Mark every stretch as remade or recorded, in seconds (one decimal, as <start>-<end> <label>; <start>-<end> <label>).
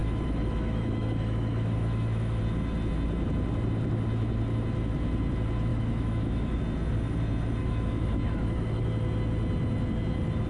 0.0-2.4 remade; 2.4-5.7 recorded; 5.7-6.6 remade; 6.6-7.6 recorded; 7.6-8.8 remade; 8.8-10.5 recorded